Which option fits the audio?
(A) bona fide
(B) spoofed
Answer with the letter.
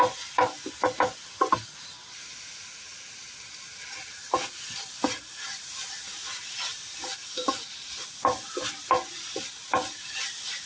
A